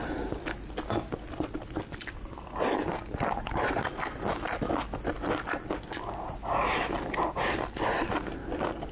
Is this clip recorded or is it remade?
recorded